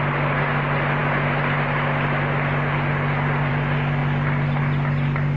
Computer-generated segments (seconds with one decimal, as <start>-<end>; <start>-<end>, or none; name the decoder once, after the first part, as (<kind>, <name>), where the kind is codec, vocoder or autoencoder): none